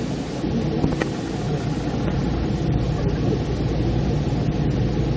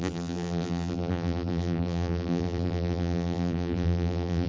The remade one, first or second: second